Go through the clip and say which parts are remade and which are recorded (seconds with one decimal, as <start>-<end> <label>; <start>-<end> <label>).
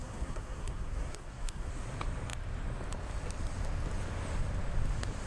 0.0-1.7 remade; 1.7-5.3 recorded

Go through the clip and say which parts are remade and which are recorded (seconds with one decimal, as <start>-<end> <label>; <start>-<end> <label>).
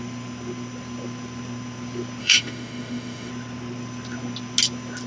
0.0-2.2 recorded; 2.2-3.3 remade; 3.3-5.1 recorded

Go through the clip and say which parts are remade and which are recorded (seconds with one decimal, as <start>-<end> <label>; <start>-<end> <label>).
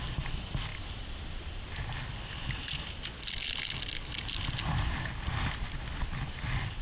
0.0-6.8 recorded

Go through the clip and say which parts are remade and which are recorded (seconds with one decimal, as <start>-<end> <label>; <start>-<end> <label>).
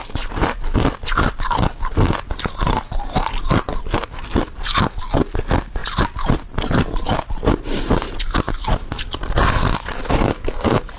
0.0-11.0 recorded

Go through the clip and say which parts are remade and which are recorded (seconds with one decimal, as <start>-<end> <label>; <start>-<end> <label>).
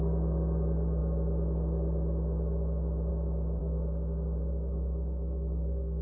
0.0-3.6 recorded; 3.6-6.0 remade